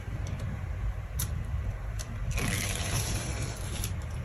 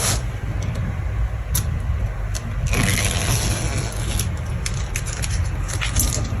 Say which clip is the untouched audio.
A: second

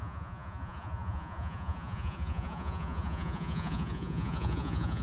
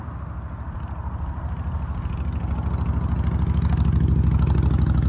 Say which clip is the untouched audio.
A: second